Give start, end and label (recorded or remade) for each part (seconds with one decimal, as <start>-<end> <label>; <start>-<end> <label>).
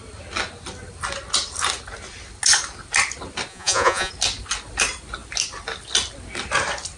0.0-3.5 recorded; 3.5-4.1 remade; 4.1-7.0 recorded